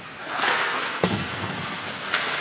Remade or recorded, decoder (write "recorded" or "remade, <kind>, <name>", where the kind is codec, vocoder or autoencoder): remade, codec, SNAC